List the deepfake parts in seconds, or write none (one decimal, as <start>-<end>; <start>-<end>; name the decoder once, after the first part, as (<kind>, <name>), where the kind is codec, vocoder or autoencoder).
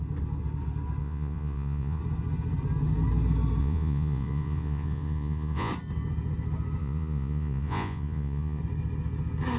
1.0-2.0 (vocoder, Vocos); 3.6-5.7; 6.8-8.6